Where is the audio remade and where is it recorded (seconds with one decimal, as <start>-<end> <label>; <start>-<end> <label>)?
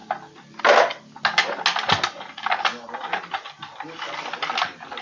0.0-5.0 recorded